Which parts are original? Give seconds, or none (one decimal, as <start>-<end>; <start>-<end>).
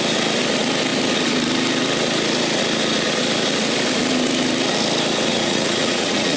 0.0-5.3